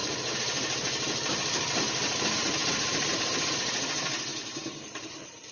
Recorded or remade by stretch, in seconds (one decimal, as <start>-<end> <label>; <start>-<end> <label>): 0.0-5.5 remade